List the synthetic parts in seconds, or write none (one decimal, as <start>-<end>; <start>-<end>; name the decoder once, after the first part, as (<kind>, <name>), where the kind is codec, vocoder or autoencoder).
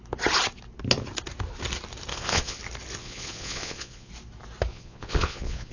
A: 2.1-2.6 (vocoder, Vocos); 3.0-4.1; 4.7-5.7